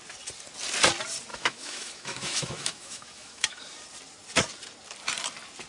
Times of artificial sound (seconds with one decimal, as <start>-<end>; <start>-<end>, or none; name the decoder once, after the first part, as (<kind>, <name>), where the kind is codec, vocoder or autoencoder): 1.3-3.6 (autoencoder, DAC-VAE)